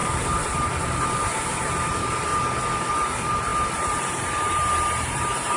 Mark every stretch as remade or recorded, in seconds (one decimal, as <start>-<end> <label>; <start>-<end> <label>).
0.0-2.3 remade; 2.3-2.9 recorded; 2.9-5.6 remade

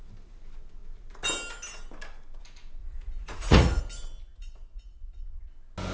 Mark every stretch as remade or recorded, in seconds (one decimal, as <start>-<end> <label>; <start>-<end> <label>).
0.0-2.8 recorded; 2.8-3.8 remade; 3.8-4.2 recorded; 4.2-5.5 remade; 5.5-5.9 recorded

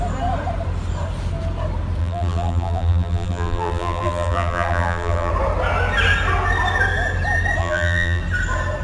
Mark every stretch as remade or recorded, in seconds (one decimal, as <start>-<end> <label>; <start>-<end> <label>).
0.0-2.0 recorded; 2.0-5.3 remade; 5.3-7.6 recorded; 7.6-8.2 remade; 8.2-8.8 recorded

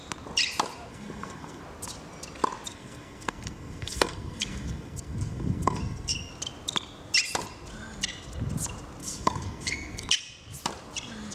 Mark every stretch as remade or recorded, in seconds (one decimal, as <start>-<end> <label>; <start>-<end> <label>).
0.0-0.9 recorded; 0.9-1.6 remade; 1.6-2.7 recorded; 2.7-6.3 remade; 6.3-9.0 recorded; 9.0-10.1 remade; 10.1-11.3 recorded

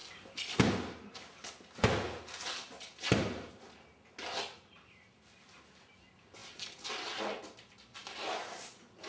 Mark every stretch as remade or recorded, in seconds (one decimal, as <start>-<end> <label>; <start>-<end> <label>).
0.0-9.1 recorded

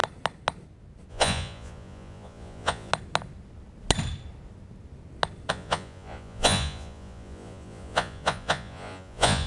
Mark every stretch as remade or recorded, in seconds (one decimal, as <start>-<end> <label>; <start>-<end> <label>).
0.0-1.1 recorded; 1.1-2.9 remade; 2.9-5.5 recorded; 5.5-9.5 remade